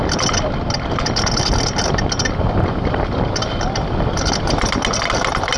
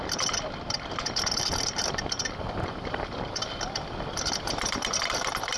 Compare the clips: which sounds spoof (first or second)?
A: second